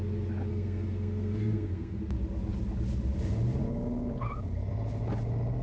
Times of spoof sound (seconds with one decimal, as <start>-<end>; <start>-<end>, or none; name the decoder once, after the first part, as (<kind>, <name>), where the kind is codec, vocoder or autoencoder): 0.5-2.0 (codec, SNAC)